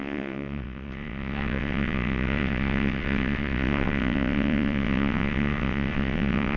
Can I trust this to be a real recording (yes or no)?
no